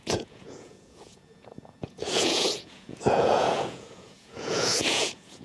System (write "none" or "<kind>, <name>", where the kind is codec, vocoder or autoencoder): vocoder, Vocos